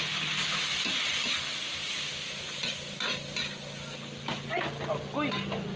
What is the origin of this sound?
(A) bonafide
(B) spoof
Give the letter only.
A